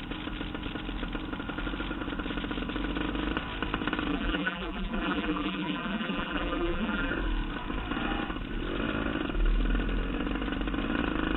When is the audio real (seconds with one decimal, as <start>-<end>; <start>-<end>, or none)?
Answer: 0.0-4.1; 7.1-11.4